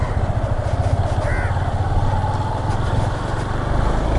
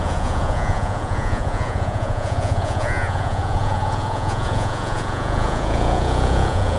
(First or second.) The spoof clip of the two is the second